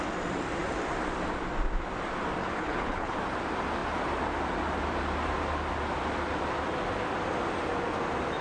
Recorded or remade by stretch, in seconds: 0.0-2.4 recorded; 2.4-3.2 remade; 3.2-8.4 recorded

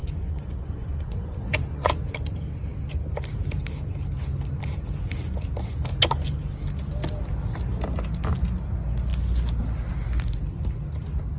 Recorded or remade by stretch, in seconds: 0.0-1.9 remade; 1.9-11.4 recorded

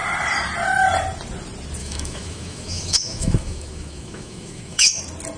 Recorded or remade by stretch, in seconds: 0.0-1.8 recorded; 1.8-5.0 remade; 5.0-5.4 recorded

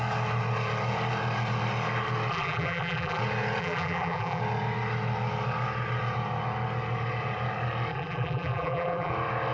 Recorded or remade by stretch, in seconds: 0.0-2.3 recorded; 2.3-3.2 remade; 3.2-3.6 recorded; 3.6-4.4 remade; 4.4-7.9 recorded; 7.9-9.1 remade; 9.1-9.5 recorded

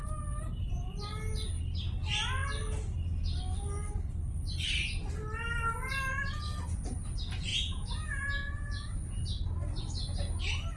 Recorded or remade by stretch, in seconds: 0.0-7.5 recorded; 7.5-9.0 remade; 9.0-10.8 recorded